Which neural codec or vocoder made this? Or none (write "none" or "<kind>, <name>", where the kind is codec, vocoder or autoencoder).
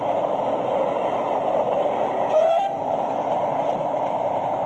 none